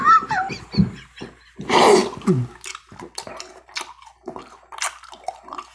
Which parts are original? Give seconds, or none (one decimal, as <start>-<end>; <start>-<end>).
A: 0.0-5.7